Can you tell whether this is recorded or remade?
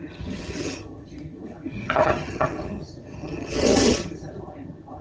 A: remade